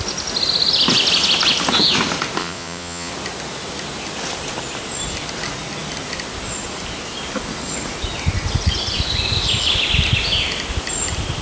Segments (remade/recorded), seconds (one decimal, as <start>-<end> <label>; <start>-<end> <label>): 0.0-2.4 recorded; 2.4-3.1 remade; 3.1-11.4 recorded